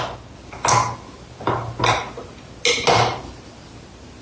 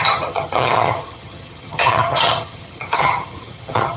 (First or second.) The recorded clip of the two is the first